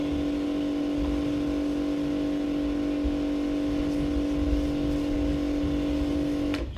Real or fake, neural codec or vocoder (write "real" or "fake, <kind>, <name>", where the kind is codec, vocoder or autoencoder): real